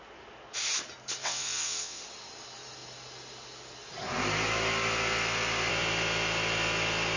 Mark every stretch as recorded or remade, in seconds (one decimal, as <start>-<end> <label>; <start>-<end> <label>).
0.0-1.2 recorded; 1.2-2.0 remade; 2.0-7.2 recorded